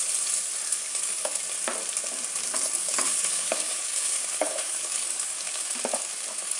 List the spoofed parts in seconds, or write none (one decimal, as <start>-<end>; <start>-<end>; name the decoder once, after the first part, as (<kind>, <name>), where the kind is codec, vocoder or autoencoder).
0.7-1.4 (codec, DAC); 2.8-6.6

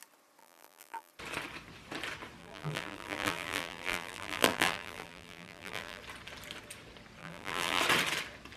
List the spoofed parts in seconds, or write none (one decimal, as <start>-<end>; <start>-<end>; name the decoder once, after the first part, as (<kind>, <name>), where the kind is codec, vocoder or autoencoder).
0.4-1.1 (vocoder, BigVGAN v2); 2.4-6.0; 7.2-7.8